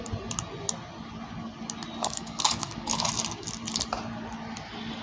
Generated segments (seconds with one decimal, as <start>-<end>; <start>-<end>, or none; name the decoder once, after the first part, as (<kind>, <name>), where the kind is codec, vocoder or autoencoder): 2.0-3.0 (codec, DAC)